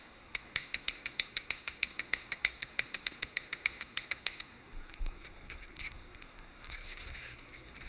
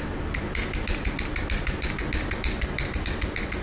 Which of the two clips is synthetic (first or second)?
first